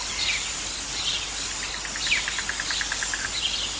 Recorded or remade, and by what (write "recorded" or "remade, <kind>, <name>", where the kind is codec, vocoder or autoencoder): recorded